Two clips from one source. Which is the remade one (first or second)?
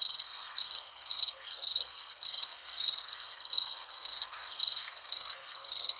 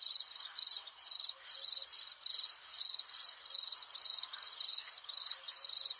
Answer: first